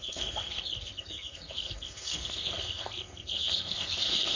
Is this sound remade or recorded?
remade